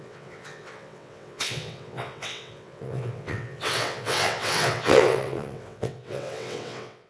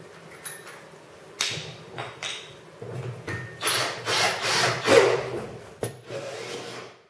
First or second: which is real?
second